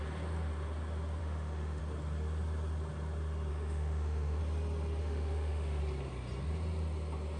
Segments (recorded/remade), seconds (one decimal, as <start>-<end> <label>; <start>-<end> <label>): 0.0-1.2 recorded; 1.2-1.8 remade; 1.8-3.5 recorded; 3.5-4.4 remade; 4.4-5.0 recorded; 5.0-5.8 remade; 5.8-7.4 recorded